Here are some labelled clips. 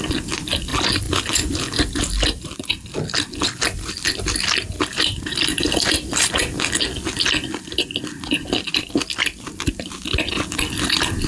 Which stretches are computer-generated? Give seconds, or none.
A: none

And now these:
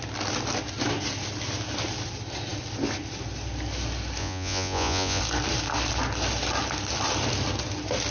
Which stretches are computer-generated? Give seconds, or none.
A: 4.2-5.2 (vocoder, Vocos)

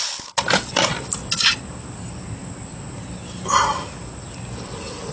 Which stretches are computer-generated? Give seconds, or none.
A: none